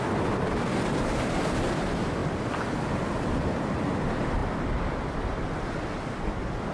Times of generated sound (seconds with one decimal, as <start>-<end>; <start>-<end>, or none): none